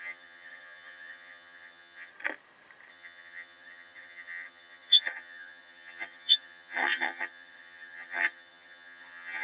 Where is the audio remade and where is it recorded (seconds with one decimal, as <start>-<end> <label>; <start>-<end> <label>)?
0.0-2.1 remade; 2.1-2.9 recorded; 2.9-9.4 remade

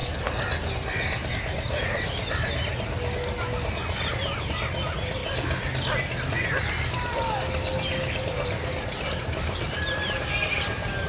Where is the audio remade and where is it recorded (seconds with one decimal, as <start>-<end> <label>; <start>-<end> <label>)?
0.0-11.1 recorded

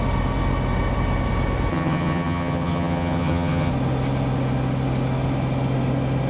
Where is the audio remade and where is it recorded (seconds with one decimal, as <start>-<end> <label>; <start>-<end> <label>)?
0.0-1.7 recorded; 1.7-3.7 remade; 3.7-6.3 recorded

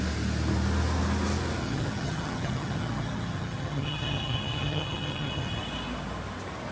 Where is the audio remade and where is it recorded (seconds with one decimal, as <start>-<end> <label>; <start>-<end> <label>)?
0.0-1.6 recorded; 1.6-5.6 remade; 5.6-6.7 recorded